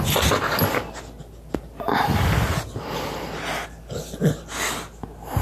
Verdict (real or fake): real